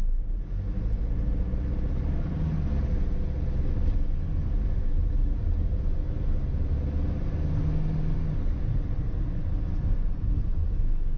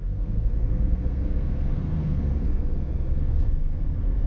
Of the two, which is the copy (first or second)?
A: second